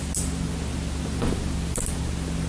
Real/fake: real